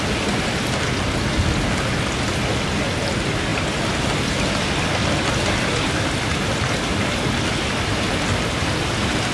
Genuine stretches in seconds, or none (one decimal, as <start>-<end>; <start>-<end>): 0.0-9.3